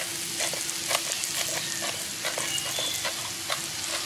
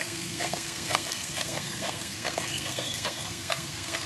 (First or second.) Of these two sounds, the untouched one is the first